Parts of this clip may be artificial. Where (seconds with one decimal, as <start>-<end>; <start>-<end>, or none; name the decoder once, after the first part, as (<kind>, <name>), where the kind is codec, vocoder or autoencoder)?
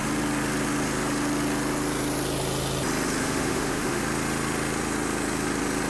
3.2-4.0 (autoencoder, DAC-VAE)